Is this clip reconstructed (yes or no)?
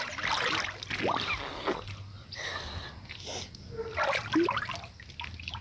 no